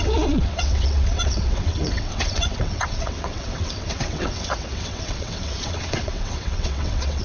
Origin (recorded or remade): remade